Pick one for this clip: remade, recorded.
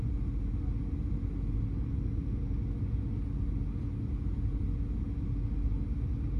recorded